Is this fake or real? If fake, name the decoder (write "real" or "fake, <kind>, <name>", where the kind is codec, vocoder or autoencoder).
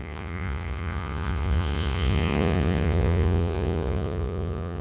fake, vocoder, Vocos